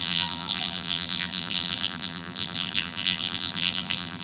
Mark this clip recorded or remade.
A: remade